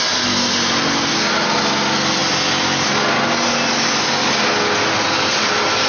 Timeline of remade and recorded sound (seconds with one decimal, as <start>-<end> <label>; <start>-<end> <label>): 0.0-5.9 recorded